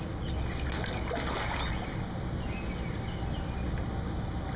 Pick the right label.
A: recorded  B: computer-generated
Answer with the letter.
A